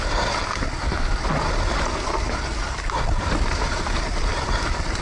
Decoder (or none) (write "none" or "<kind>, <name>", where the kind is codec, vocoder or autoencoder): vocoder, BigVGAN v2